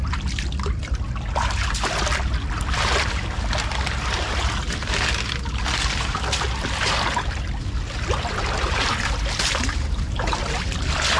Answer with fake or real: real